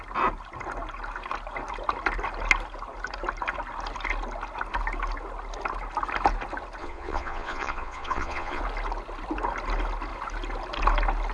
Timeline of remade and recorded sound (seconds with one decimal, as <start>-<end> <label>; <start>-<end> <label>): 0.0-6.8 recorded; 6.8-8.6 remade; 8.6-11.3 recorded